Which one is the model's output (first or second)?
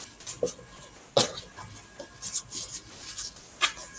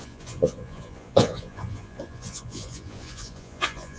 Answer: second